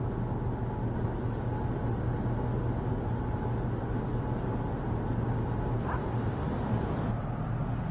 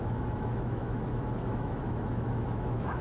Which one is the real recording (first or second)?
first